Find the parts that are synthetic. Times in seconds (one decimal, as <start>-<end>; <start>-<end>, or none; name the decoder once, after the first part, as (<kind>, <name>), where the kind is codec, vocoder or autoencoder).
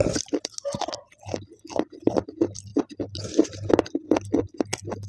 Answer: none